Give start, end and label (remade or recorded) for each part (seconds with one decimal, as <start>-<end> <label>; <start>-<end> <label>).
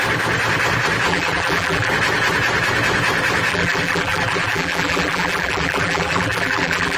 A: 0.0-1.1 recorded; 1.1-1.9 remade; 1.9-3.5 recorded; 3.5-7.0 remade